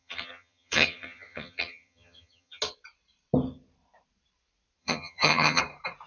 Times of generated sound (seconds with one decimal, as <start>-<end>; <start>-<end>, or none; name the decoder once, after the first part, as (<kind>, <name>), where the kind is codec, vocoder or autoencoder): 0.0-2.6 (vocoder, HiFi-GAN); 4.8-5.6